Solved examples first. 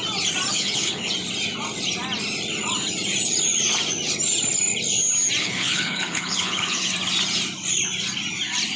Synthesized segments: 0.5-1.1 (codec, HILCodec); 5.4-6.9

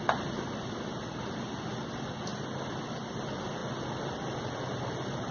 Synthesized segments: none

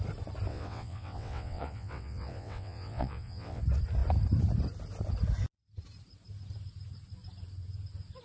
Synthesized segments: 0.5-3.6 (vocoder, WaveNeXt)